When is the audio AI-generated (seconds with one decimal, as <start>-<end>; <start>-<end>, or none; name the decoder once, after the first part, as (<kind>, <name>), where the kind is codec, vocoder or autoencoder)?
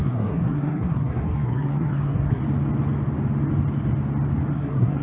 0.0-2.4 (codec, SNAC); 4.5-5.0